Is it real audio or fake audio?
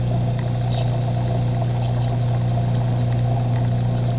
real